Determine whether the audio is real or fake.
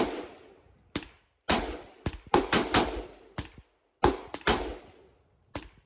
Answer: real